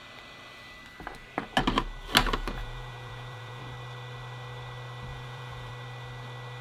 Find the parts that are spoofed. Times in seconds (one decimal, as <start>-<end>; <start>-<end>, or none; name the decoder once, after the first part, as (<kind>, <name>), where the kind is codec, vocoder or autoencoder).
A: 2.6-3.6 (vocoder, Vocos); 5.1-5.7